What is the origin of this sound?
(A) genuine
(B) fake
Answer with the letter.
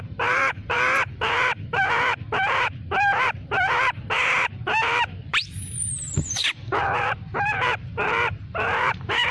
B